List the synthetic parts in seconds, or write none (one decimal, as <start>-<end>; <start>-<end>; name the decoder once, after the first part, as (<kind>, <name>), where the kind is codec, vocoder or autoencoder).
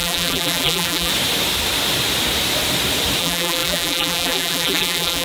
0.0-1.1 (vocoder, BigVGAN v2); 3.2-5.2